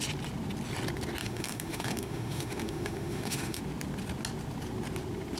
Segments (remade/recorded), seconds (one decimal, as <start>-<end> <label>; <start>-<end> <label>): 0.0-1.2 recorded; 1.2-3.6 remade; 3.6-5.4 recorded